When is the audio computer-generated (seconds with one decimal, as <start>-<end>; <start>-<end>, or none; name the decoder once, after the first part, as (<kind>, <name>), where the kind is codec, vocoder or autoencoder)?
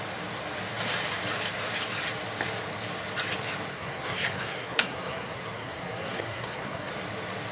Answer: 3.7-6.9 (codec, SNAC)